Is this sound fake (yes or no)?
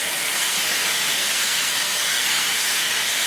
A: yes